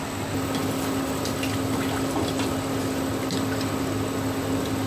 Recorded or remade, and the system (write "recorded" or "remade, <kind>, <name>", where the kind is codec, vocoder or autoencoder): recorded